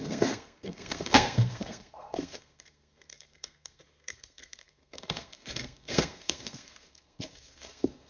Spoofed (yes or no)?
yes